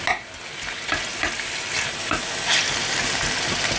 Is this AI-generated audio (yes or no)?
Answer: no